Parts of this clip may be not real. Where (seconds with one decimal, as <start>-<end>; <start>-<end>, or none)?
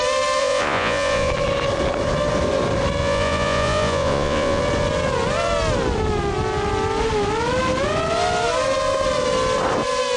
0.4-1.3; 3.0-4.6